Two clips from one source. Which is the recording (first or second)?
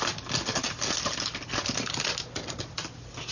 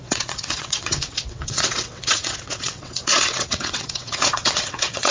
first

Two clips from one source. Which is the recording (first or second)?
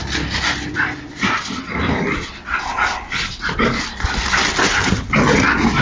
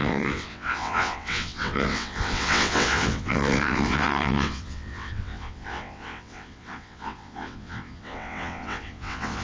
first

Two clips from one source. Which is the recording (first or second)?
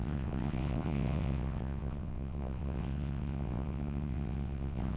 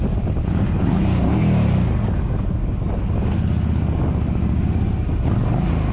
second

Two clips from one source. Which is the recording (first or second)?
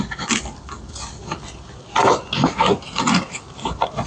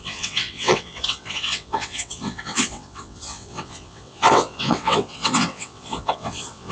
first